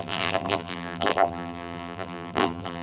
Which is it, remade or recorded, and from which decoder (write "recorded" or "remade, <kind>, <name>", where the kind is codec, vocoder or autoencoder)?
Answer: remade, vocoder, BigVGAN v2